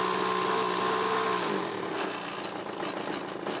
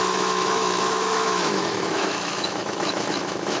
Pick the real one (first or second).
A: first